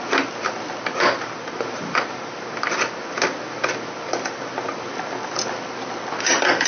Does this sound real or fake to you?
real